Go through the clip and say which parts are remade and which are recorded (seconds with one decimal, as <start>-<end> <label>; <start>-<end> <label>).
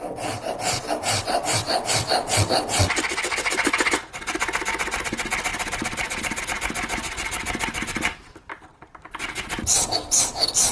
0.0-5.5 recorded; 5.5-6.4 remade; 6.4-10.7 recorded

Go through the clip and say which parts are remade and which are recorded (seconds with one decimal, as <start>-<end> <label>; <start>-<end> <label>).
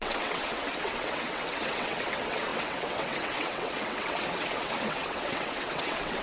0.0-6.2 remade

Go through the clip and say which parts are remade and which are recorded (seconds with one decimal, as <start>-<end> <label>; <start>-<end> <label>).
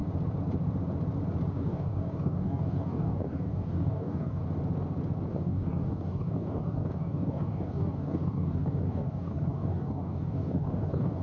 0.0-1.5 recorded; 1.5-4.4 remade; 4.4-5.3 recorded; 5.3-11.2 remade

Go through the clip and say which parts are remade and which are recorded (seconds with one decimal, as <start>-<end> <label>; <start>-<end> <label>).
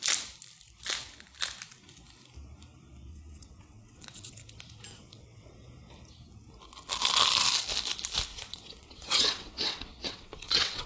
0.0-3.1 recorded; 3.1-4.4 remade; 4.4-4.9 recorded; 4.9-5.5 remade; 5.5-8.3 recorded; 8.3-10.9 remade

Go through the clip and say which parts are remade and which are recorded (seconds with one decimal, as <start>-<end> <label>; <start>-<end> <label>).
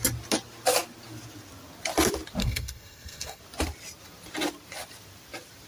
0.0-2.4 recorded; 2.4-3.4 remade; 3.4-5.7 recorded